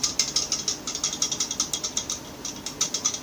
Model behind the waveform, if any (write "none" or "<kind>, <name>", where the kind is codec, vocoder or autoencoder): none